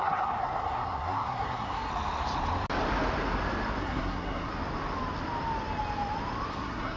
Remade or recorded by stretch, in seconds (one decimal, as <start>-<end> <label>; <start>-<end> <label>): 0.0-1.9 remade; 1.9-3.8 recorded; 3.8-4.5 remade; 4.5-6.5 recorded; 6.5-7.0 remade